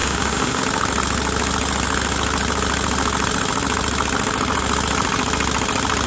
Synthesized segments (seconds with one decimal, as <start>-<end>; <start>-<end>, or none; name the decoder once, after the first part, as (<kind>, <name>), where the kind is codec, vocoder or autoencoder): 0.0-0.6 (autoencoder, DAC-VAE)